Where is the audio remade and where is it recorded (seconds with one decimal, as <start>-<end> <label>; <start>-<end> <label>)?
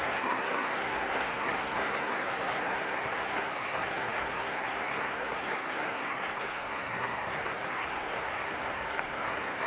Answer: 0.0-9.7 remade